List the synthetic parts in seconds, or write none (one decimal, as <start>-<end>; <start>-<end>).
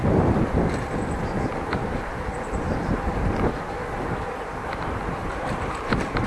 1.8-3.7; 4.6-5.7